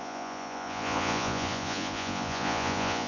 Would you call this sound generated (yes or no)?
yes